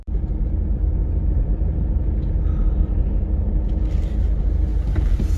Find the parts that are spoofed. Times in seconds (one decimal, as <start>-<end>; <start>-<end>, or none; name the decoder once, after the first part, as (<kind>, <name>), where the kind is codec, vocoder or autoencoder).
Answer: none